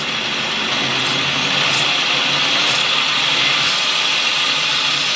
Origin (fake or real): real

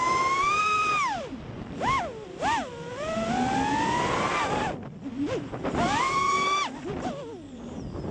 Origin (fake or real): real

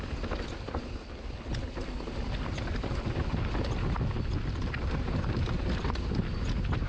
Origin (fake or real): real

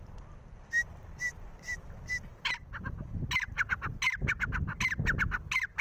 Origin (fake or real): real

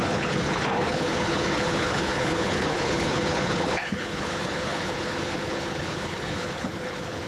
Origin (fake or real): fake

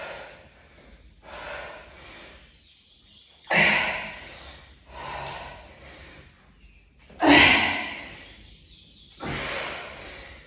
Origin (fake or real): real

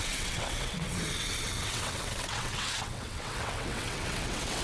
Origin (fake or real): fake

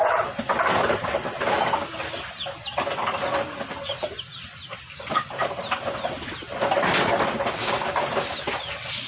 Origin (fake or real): real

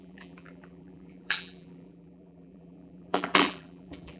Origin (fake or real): fake